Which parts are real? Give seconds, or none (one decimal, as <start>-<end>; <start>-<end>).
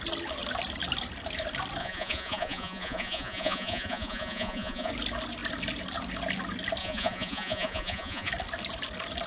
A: 0.0-1.8; 4.9-6.8; 8.3-9.3